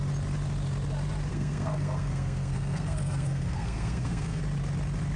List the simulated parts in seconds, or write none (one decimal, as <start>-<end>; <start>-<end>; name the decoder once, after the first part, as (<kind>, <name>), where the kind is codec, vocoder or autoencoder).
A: 1.3-4.4 (codec, SNAC)